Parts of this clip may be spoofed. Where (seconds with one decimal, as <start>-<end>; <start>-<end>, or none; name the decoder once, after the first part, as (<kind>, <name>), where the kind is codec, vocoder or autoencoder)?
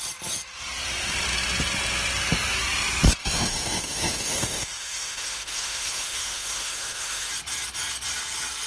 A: 3.2-7.3 (autoencoder, DAC-VAE)